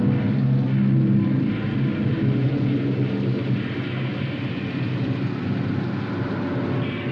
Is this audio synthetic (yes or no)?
no